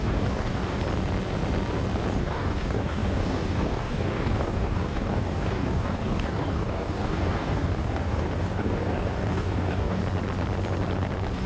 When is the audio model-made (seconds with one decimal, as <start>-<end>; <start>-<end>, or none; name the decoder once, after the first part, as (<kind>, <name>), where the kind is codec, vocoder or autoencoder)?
0.0-0.8 (codec, DAC); 2.2-10.0